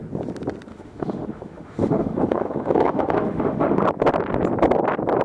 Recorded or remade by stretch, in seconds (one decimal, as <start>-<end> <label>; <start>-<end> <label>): 0.0-0.7 recorded; 0.7-3.8 remade; 3.8-5.2 recorded